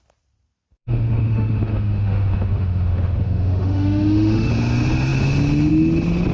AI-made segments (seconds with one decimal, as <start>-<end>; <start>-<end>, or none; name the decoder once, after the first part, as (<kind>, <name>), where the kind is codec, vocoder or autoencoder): 0.7-4.5 (autoencoder, DAC-VAE)